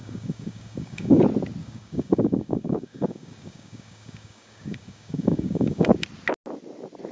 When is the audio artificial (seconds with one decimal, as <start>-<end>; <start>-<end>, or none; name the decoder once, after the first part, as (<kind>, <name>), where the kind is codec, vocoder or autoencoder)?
0.0-1.2 (codec, DAC); 1.6-5.9